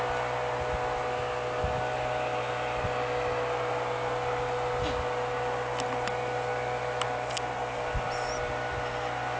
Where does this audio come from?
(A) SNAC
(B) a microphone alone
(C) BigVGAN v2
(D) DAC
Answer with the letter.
B